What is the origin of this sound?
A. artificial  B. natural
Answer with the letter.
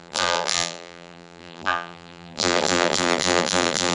A